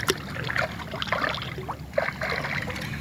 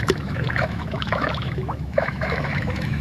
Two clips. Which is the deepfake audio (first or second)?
second